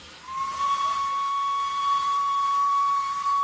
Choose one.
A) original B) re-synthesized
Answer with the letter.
A